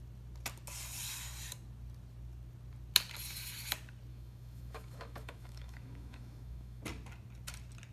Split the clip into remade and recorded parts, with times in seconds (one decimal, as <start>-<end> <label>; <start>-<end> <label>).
0.0-4.1 recorded; 4.1-6.8 remade; 6.8-7.9 recorded